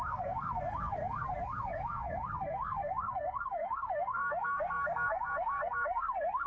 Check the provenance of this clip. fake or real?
fake